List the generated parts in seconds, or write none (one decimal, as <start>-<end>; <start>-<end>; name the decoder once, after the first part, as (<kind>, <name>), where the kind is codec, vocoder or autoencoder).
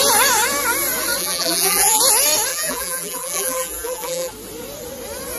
1.2-2.0 (vocoder, BigVGAN v2); 2.5-4.3